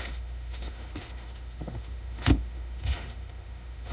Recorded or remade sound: remade